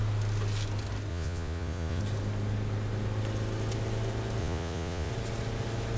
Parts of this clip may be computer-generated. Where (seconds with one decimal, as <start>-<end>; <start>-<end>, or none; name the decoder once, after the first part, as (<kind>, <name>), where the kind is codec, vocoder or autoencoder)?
1.1-2.0 (vocoder, Vocos); 4.4-5.1